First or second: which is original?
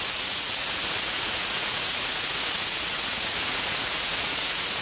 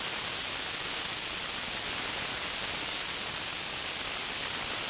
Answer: second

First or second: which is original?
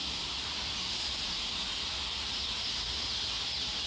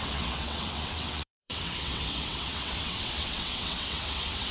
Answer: first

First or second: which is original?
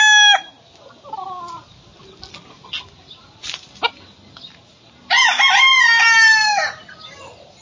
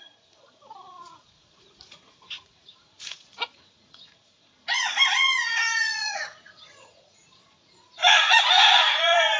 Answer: first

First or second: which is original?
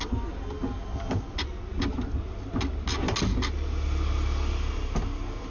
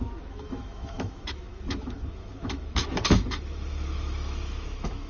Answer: first